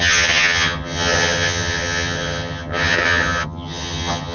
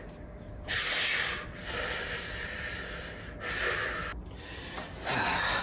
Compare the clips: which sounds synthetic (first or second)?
first